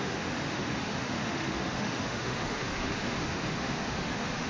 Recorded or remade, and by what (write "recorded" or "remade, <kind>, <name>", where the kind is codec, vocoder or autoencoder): remade, autoencoder, DAC-VAE